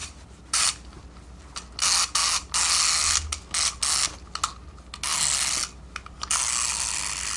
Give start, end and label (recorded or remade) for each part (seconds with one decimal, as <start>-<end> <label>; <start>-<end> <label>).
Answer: 0.0-1.0 remade; 1.0-7.4 recorded